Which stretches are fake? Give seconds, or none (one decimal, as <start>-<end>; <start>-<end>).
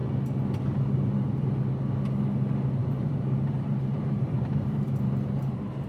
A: 2.8-5.1